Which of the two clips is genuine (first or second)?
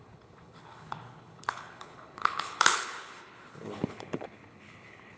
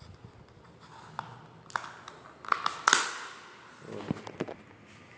second